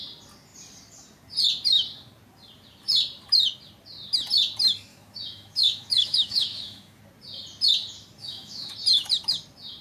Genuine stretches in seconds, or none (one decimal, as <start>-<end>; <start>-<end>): 0.0-4.9; 7.0-8.2; 8.7-9.8